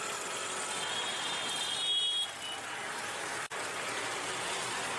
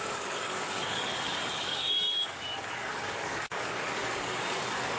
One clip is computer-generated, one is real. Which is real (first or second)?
first